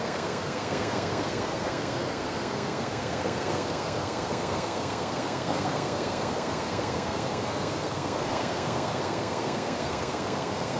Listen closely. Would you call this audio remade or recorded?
remade